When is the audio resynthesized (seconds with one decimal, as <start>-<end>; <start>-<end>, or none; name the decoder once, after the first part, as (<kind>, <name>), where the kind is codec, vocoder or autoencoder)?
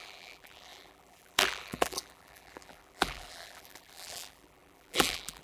0.0-5.4 (vocoder, BigVGAN v2)